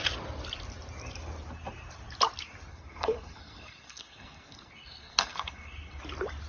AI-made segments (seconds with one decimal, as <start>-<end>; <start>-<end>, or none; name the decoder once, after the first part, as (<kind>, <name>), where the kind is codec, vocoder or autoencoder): 2.7-6.0 (codec, SNAC)